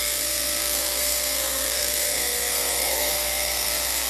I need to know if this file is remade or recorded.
remade